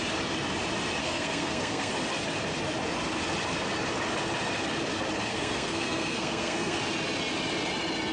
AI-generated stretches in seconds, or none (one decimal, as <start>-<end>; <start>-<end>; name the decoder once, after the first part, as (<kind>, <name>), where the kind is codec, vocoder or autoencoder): 1.0-1.9 (codec, SNAC); 5.3-6.8